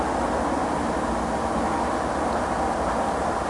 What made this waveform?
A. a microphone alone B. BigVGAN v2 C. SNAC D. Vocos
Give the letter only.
A